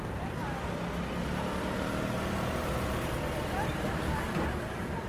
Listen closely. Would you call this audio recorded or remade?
recorded